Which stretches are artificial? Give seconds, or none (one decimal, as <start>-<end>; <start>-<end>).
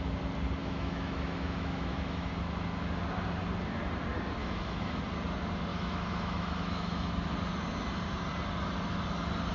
0.6-2.3; 4.4-5.0; 5.7-7.1